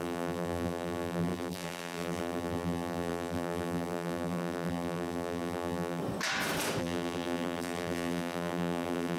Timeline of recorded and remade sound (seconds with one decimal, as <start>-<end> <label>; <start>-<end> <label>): 0.0-6.0 remade; 6.0-6.8 recorded; 6.8-9.2 remade